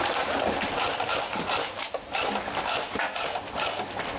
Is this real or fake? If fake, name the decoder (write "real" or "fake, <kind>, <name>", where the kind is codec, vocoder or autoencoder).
real